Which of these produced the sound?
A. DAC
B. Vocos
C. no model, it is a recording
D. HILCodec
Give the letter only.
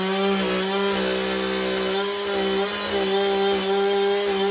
C